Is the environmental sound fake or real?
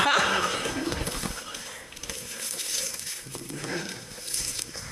fake